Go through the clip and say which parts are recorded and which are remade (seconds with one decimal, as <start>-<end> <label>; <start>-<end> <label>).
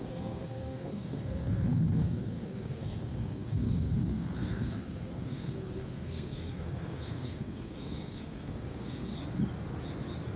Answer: 0.0-9.1 remade; 9.1-10.4 recorded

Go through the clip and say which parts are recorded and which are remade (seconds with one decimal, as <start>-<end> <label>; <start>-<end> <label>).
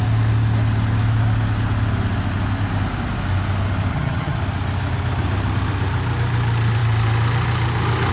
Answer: 0.0-3.9 recorded; 3.9-4.4 remade; 4.4-8.1 recorded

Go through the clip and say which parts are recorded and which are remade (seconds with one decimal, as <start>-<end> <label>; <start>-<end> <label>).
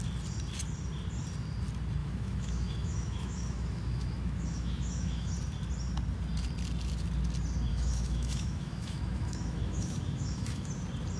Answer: 0.0-2.0 recorded; 2.0-5.3 remade; 5.3-7.7 recorded; 7.7-10.7 remade; 10.7-11.2 recorded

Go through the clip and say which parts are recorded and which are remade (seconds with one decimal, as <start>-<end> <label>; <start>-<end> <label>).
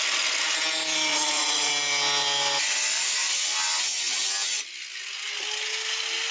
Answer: 0.0-1.1 recorded; 1.1-1.7 remade; 1.7-6.3 recorded